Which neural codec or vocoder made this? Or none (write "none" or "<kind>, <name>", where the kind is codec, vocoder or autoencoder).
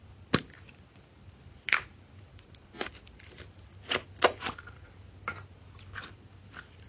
none